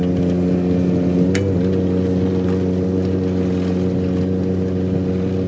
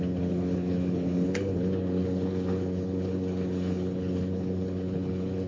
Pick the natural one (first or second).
first